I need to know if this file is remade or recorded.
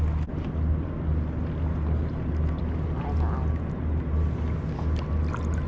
recorded